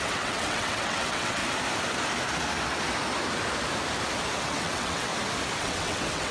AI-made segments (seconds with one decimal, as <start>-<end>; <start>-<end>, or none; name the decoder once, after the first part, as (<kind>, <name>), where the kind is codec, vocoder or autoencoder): 0.0-1.4 (vocoder, WaveNeXt); 4.4-5.1; 5.6-6.3